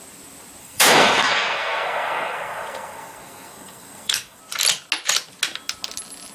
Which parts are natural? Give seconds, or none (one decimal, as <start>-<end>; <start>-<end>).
0.0-0.6; 4.4-6.3